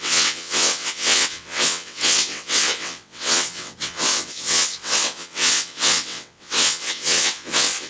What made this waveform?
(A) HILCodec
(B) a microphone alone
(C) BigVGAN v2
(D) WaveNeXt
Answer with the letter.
D